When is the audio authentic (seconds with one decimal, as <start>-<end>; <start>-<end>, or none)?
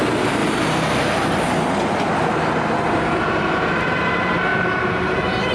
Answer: 0.4-3.2